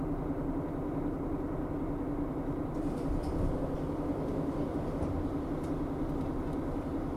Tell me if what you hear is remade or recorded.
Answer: recorded